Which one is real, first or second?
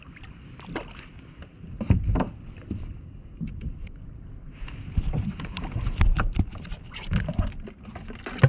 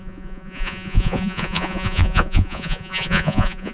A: first